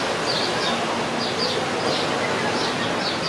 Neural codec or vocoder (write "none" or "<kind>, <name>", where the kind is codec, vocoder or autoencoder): none